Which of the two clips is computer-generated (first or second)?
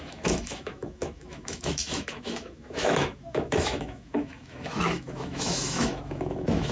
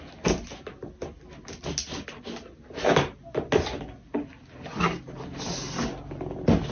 first